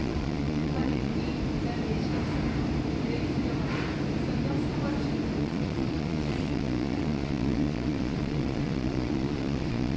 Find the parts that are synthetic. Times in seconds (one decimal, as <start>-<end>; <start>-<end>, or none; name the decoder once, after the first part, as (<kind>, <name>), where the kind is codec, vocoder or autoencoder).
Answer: 0.0-1.1 (vocoder, Vocos); 5.4-10.0